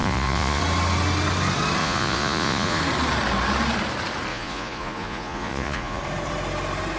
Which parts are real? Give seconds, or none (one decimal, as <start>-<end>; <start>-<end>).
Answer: 0.6-1.8; 2.8-4.3; 6.0-7.0